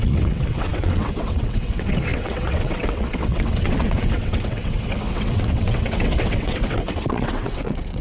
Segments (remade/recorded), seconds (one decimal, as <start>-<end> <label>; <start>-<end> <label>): 0.0-8.0 remade

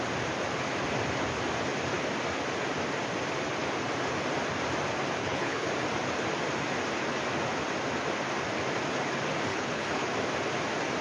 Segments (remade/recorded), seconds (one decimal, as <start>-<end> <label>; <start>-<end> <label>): 0.0-5.2 recorded; 5.2-5.7 remade; 5.7-9.5 recorded; 9.5-10.1 remade; 10.1-11.0 recorded

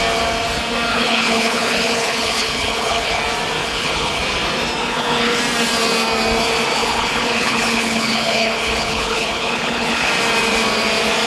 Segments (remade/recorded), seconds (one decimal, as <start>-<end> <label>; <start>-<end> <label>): 0.0-0.9 recorded; 0.9-3.2 remade; 3.2-3.6 recorded; 3.6-4.2 remade; 4.2-4.8 recorded; 4.8-5.4 remade; 5.4-6.8 recorded; 6.8-10.1 remade; 10.1-11.3 recorded

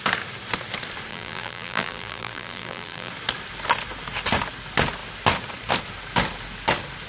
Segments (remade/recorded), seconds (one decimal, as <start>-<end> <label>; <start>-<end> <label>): 0.0-1.1 recorded; 1.1-3.1 remade; 3.1-7.1 recorded